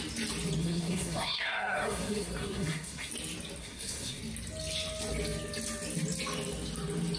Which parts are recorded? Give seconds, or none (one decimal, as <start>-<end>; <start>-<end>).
0.0-0.6; 3.1-3.6; 4.2-7.2